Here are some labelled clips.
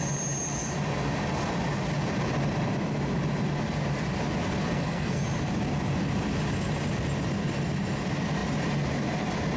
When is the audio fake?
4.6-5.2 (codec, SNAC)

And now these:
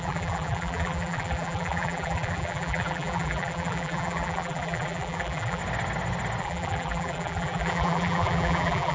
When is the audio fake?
0.0-5.6 (vocoder, BigVGAN v2); 6.4-8.9